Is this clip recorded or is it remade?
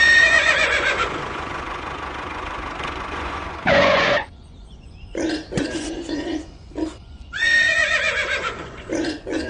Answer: remade